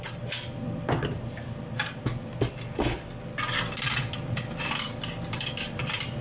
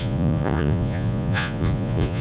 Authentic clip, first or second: first